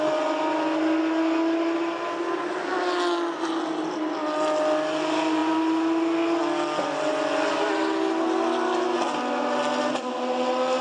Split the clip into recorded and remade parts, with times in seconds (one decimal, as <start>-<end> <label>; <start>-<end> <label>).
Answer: 0.0-10.8 recorded